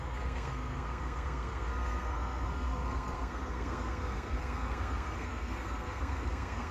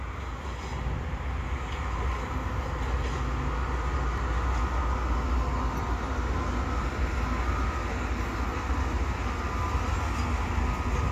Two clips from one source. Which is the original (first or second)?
second